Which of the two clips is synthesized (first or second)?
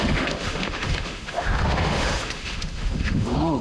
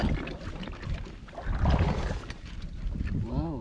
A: first